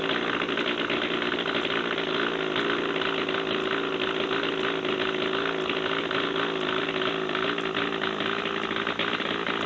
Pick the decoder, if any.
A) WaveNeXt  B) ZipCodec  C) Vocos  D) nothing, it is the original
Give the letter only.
D